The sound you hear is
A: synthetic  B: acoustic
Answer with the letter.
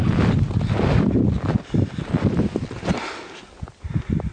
B